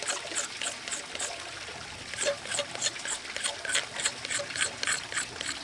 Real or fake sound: fake